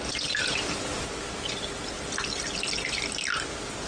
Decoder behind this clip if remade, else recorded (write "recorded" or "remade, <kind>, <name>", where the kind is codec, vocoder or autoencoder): recorded